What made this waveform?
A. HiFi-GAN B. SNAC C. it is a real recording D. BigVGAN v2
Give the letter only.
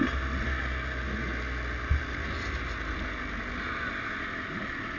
C